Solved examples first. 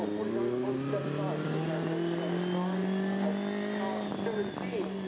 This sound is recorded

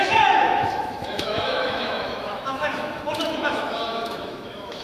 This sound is remade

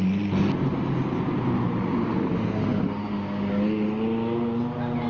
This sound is recorded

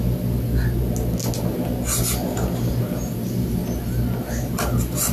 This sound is recorded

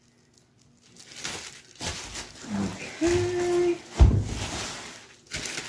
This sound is recorded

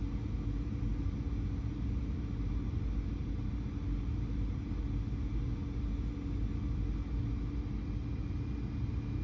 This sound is recorded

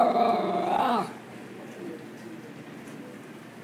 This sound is recorded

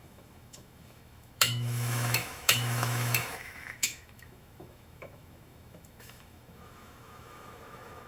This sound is remade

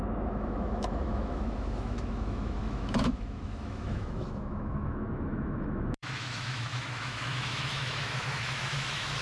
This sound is remade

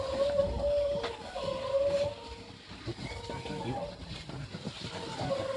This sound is recorded